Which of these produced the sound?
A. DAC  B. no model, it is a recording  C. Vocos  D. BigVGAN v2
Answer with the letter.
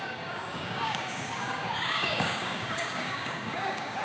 A